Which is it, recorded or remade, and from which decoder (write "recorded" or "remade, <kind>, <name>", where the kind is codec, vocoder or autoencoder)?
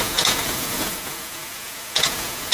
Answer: remade, vocoder, Vocos